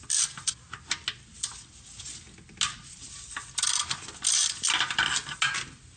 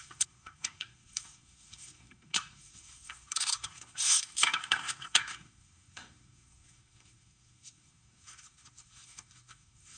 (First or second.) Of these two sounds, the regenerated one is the second